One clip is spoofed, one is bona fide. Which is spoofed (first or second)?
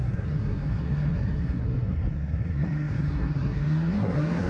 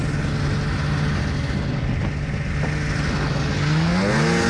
first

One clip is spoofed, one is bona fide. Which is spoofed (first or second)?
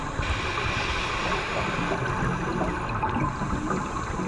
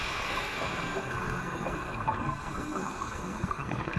second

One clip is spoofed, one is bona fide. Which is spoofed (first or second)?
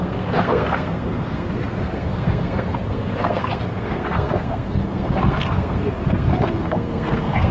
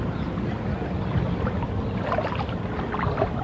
first